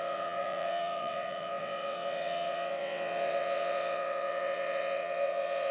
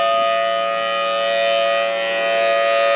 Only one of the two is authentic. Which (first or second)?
second